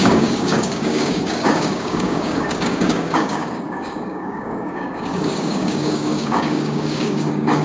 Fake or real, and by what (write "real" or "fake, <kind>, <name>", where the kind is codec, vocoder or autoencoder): fake, codec, DAC